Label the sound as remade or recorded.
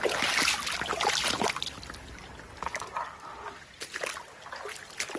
recorded